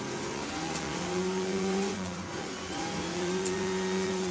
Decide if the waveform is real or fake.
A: fake